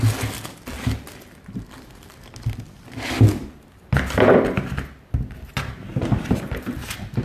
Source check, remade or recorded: recorded